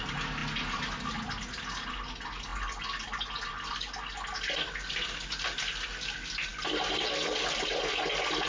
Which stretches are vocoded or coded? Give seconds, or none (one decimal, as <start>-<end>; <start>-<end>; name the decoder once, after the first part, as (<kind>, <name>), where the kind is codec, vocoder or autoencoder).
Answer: none